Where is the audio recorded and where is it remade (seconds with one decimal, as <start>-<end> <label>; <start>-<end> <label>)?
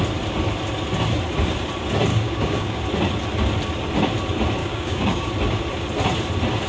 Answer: 0.0-2.1 recorded; 2.1-2.8 remade; 2.8-4.6 recorded; 4.6-5.3 remade; 5.3-6.7 recorded